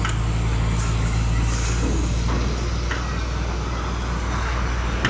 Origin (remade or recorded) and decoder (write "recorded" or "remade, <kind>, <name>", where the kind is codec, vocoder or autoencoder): recorded